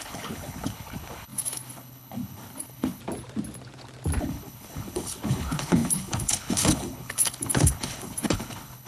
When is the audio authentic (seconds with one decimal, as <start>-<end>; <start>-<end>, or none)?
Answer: 3.0-4.2